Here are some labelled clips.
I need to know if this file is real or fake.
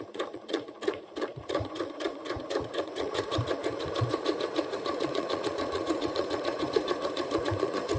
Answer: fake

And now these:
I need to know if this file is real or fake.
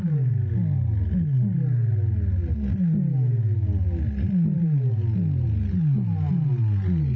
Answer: real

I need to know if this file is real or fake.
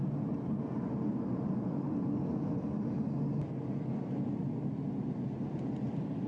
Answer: real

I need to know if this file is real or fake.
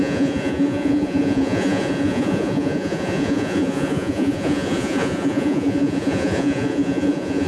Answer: fake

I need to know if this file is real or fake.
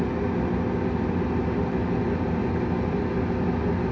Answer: real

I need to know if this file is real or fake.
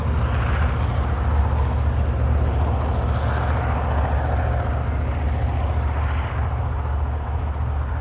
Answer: real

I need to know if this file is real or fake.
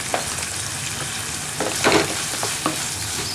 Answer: real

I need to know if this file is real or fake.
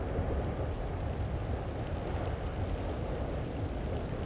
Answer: real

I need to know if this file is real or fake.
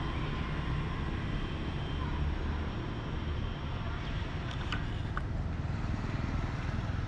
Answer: real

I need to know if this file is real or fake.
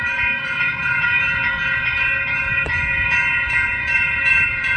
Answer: fake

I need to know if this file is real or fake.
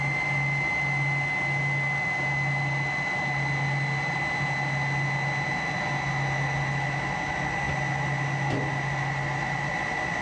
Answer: real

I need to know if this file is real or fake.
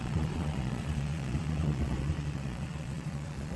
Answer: fake